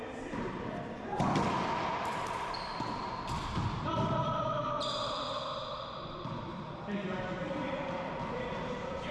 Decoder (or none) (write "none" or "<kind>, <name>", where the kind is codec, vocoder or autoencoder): vocoder, BigVGAN v2